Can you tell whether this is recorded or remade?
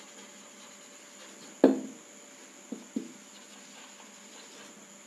recorded